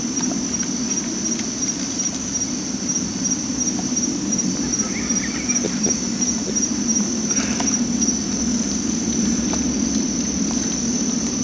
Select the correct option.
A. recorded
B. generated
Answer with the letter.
A